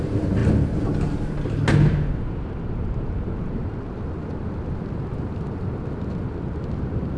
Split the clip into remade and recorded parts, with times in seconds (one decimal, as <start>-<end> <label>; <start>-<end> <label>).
0.0-7.2 recorded

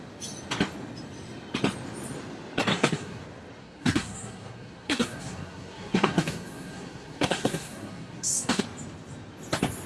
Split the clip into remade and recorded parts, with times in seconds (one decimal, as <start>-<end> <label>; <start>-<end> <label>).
0.0-2.7 recorded; 2.7-3.2 remade; 3.2-3.6 recorded; 3.6-8.6 remade; 8.6-9.9 recorded